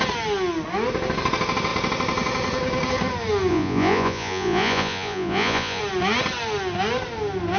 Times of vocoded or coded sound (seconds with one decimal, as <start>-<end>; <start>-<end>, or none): 3.5-5.8

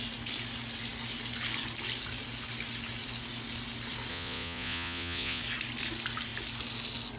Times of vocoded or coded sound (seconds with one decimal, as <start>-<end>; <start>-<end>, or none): 4.1-5.4

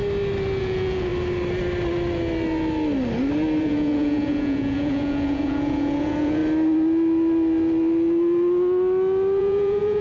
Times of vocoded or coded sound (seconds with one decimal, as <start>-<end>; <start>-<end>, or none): 0.6-1.1; 3.6-6.4; 9.4-10.0

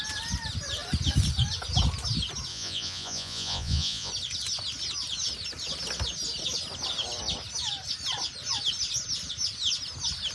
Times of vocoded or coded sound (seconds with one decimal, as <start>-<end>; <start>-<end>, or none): 2.5-4.1

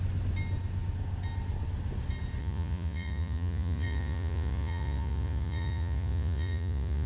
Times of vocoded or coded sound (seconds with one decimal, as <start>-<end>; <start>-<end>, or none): 2.4-7.1